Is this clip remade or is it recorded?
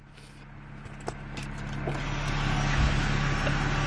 recorded